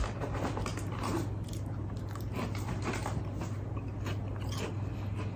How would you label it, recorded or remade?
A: recorded